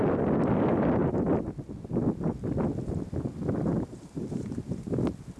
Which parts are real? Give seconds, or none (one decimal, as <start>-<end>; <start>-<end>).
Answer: 0.0-3.7; 4.9-5.4